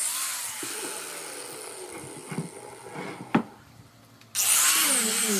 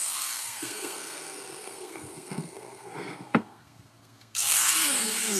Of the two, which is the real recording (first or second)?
first